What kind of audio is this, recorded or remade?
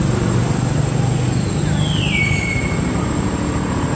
recorded